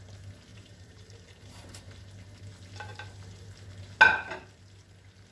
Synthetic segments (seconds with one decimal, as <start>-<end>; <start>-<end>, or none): 0.5-2.1